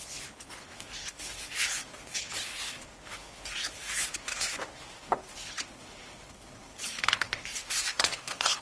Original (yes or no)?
no